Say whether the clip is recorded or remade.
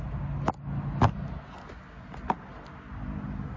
recorded